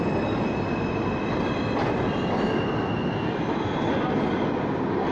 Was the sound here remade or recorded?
recorded